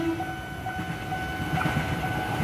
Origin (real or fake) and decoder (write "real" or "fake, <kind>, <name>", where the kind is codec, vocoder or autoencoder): real